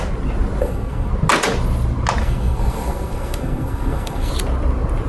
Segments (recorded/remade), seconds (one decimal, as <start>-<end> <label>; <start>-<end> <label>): 0.0-0.6 recorded; 0.6-1.1 remade; 1.1-2.2 recorded; 2.2-4.3 remade; 4.3-5.1 recorded